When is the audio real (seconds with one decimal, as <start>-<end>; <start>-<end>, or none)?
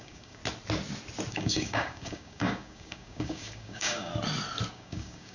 0.4-1.3; 4.1-4.7